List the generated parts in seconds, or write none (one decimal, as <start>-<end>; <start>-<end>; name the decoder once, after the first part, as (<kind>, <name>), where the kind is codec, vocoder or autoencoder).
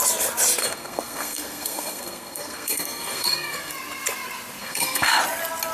0.6-3.7 (codec, SNAC); 4.6-5.2